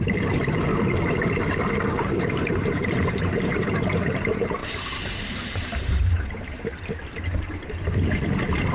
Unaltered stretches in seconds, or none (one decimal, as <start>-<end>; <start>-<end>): 0.7-1.6; 6.7-8.7

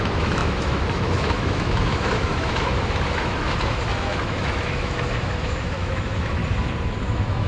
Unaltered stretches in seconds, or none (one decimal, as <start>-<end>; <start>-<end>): 6.4-7.0